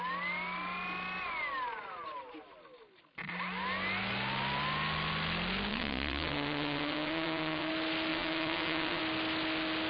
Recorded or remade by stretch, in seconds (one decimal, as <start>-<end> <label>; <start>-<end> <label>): 0.0-5.7 recorded; 5.7-7.7 remade; 7.7-8.1 recorded; 8.1-9.0 remade; 9.0-9.9 recorded